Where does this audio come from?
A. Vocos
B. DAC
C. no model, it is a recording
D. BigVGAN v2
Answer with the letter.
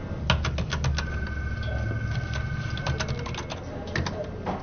C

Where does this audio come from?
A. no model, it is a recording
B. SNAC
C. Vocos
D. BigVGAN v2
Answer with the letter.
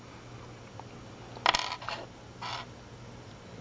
A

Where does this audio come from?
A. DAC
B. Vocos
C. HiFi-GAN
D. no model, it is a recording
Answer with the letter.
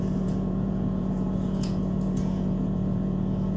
B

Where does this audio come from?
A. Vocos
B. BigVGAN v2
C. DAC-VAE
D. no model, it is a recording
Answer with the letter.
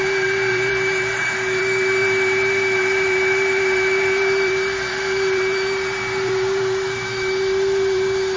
B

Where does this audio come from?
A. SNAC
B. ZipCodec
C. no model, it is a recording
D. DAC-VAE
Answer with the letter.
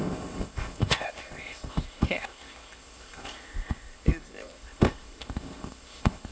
B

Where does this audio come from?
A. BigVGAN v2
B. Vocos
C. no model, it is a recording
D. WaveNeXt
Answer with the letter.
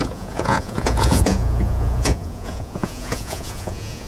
B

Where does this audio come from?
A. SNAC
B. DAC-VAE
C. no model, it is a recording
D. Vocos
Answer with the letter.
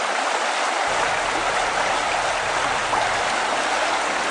C